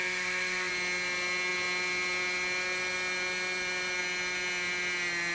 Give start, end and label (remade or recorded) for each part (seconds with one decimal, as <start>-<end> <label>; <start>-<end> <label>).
0.0-0.7 remade; 0.7-5.3 recorded